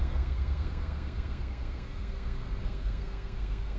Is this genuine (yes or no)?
no